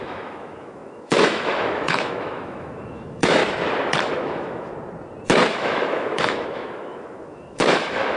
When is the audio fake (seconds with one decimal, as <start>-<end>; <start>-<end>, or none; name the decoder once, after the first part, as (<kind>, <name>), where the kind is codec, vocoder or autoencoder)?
0.0-3.4 (autoencoder, DAC-VAE); 4.0-4.7; 5.5-8.2

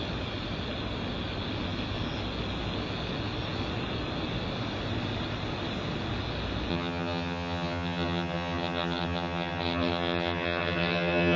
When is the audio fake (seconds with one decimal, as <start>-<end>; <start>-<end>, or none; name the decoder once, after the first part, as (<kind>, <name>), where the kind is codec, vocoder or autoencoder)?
6.7-11.4 (vocoder, HiFi-GAN)

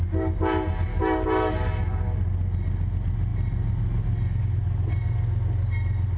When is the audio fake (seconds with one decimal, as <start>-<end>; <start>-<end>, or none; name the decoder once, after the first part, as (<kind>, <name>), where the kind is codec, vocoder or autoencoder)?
0.9-1.5 (codec, DAC)

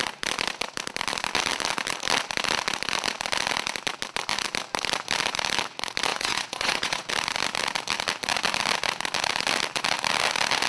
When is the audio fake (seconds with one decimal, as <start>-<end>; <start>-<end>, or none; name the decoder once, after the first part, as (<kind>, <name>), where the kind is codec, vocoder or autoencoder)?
6.1-7.1 (vocoder, Vocos)

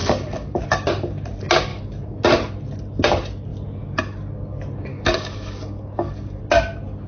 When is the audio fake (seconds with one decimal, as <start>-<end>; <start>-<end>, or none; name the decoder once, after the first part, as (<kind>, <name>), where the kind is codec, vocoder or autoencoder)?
0.0-0.6 (codec, DAC); 1.7-2.2; 4.9-6.4

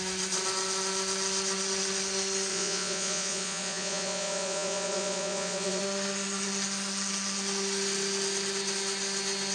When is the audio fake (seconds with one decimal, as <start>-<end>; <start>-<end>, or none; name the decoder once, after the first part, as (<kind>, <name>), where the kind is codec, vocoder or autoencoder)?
2.5-5.8 (vocoder, Vocos)

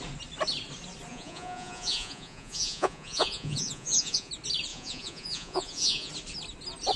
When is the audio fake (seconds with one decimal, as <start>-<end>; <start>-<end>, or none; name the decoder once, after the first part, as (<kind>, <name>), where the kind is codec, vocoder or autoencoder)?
1.1-4.3 (vocoder, Vocos); 4.7-6.1